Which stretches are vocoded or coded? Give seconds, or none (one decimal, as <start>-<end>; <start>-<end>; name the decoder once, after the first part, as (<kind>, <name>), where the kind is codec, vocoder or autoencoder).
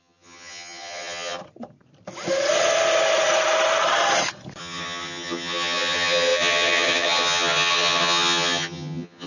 0.0-1.4 (vocoder, HiFi-GAN); 4.6-9.3